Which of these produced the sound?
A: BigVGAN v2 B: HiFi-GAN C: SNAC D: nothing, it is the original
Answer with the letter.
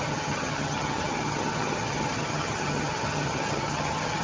B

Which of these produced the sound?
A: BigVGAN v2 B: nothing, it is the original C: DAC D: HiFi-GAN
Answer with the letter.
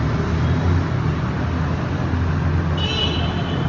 B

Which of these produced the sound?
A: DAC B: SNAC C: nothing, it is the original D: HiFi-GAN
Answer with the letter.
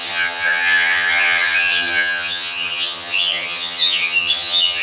D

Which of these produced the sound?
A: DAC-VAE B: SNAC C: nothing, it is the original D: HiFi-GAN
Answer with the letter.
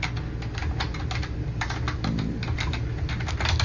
C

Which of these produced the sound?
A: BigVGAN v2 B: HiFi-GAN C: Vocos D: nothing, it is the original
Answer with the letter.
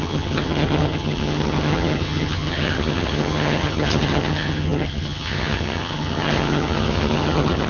B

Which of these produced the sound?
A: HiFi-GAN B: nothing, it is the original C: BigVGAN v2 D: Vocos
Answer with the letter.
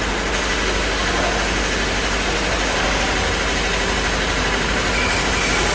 B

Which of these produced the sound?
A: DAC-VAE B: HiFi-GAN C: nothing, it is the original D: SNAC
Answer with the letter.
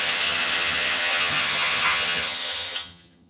B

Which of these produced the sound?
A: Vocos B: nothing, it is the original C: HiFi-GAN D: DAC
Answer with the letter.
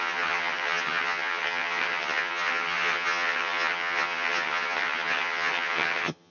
C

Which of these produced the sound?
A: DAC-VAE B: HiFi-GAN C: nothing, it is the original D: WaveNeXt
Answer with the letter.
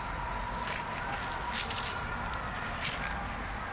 C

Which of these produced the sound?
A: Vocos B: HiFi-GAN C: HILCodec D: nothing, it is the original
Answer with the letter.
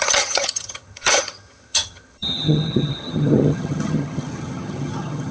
B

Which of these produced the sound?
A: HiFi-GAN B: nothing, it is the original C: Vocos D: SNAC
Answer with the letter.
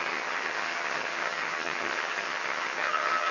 A